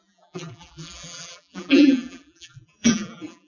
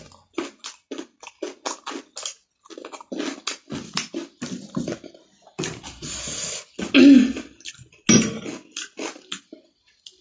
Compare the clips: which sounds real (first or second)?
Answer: second